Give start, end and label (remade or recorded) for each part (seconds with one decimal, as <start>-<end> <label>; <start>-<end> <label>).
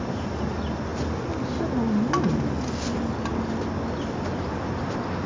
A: 0.0-5.3 recorded